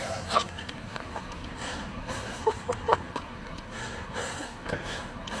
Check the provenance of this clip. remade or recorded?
remade